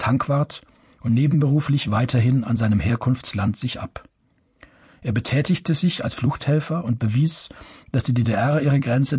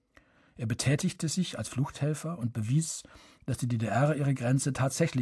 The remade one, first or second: first